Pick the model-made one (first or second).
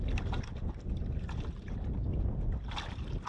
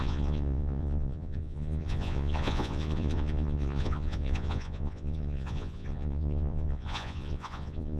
second